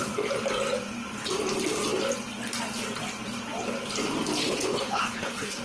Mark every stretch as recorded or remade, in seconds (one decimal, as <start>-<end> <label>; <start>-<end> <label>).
0.0-4.4 recorded; 4.4-5.6 remade